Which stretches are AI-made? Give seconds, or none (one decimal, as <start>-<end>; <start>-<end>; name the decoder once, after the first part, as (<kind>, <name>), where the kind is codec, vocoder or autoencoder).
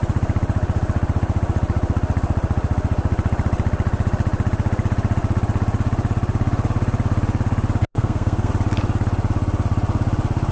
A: 7.8-8.5 (codec, SNAC)